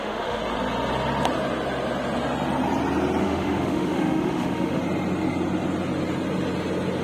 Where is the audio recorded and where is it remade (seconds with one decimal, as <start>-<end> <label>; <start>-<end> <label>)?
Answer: 0.0-0.4 remade; 0.4-3.2 recorded; 3.2-4.8 remade; 4.8-7.0 recorded

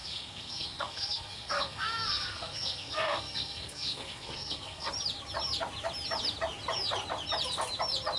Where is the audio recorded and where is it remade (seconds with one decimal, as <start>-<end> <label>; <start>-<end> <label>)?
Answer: 0.0-4.9 remade; 4.9-8.2 recorded

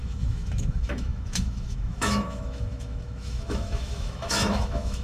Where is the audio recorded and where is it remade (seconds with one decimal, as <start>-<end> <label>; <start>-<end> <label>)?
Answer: 0.0-5.0 remade

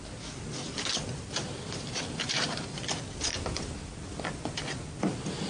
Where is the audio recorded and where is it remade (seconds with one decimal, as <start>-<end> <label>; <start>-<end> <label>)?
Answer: 0.0-1.4 recorded; 1.4-2.9 remade; 2.9-5.5 recorded

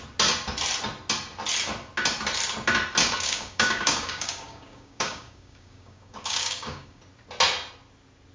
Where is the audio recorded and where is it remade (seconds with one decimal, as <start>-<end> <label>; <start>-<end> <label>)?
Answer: 0.0-3.0 recorded; 3.0-7.0 remade; 7.0-8.3 recorded